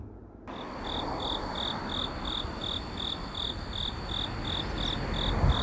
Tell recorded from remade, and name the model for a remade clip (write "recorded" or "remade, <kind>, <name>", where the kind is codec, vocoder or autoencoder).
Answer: recorded